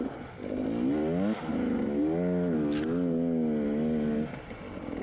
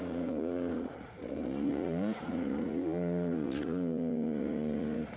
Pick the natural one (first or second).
first